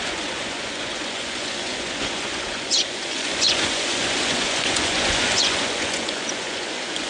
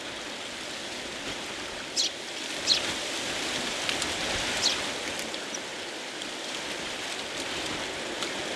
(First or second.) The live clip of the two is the second